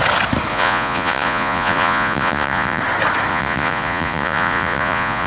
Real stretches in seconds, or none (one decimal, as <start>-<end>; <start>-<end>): 0.0-0.5; 2.8-3.3